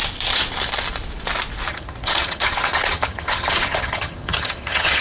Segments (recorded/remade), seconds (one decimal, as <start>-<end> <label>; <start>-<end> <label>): 0.0-1.7 recorded; 1.7-5.0 remade